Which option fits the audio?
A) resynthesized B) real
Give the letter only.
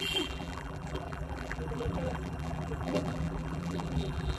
A